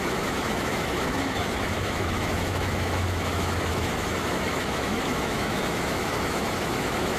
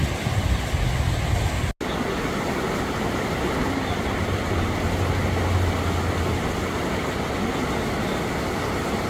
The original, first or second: second